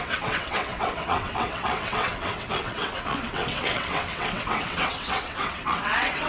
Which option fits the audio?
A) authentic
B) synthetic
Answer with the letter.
B